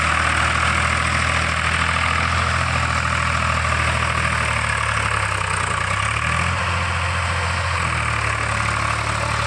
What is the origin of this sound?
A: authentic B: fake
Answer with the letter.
A